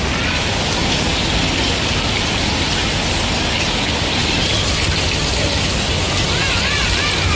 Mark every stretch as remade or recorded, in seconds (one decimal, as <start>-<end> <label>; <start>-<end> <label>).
0.0-7.4 recorded

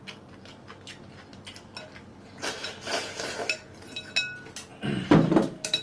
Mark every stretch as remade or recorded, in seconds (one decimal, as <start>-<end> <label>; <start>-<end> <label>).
0.0-5.8 recorded

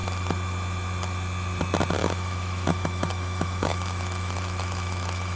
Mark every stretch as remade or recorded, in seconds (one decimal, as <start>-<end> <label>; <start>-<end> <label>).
0.0-2.0 recorded; 2.0-5.4 remade

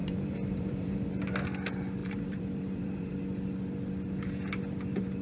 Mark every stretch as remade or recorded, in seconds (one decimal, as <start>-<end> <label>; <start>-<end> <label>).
0.0-1.1 remade; 1.1-2.0 recorded; 2.0-3.1 remade; 3.1-5.2 recorded

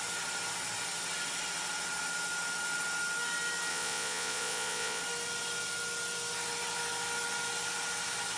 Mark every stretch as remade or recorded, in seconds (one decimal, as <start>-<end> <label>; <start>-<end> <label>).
0.0-3.7 recorded; 3.7-5.0 remade; 5.0-8.4 recorded

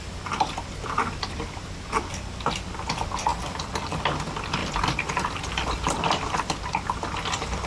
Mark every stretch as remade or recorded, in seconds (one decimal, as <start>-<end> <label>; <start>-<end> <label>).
0.0-3.3 recorded; 3.3-4.0 remade; 4.0-4.6 recorded; 4.6-6.0 remade; 6.0-7.7 recorded